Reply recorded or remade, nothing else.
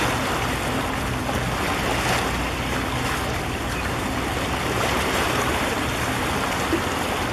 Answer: recorded